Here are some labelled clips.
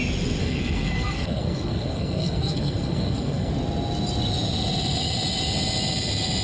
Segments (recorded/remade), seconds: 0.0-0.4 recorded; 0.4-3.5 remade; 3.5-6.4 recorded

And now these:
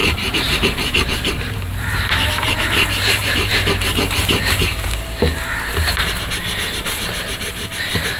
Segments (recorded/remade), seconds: 0.0-4.9 remade; 4.9-8.2 recorded

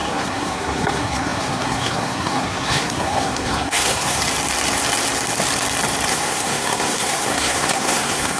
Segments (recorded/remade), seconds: 0.0-4.2 remade; 4.2-6.1 recorded; 6.1-8.4 remade

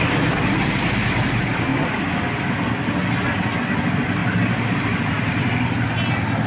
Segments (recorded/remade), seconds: 0.0-6.5 recorded

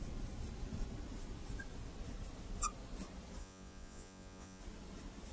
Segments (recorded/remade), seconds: 0.0-3.4 recorded; 3.4-4.6 remade; 4.6-5.3 recorded

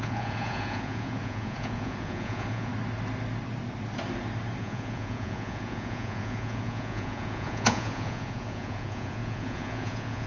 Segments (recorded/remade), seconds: 0.0-2.7 remade; 2.7-4.6 recorded; 4.6-10.3 remade

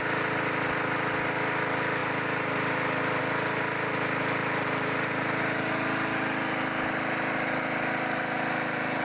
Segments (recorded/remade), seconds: 0.0-9.0 recorded